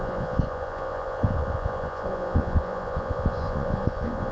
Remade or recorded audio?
remade